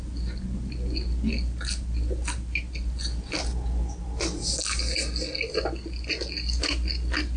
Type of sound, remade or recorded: recorded